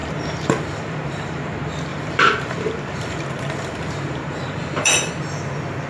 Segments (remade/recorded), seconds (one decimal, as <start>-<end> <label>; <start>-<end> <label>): 0.0-1.4 remade; 1.4-1.9 recorded; 1.9-5.1 remade; 5.1-5.9 recorded